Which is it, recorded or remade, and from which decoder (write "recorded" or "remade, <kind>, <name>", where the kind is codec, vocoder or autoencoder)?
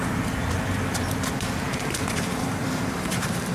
remade, vocoder, BigVGAN v2